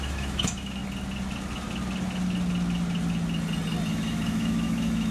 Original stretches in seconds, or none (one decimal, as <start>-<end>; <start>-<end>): 0.8-3.9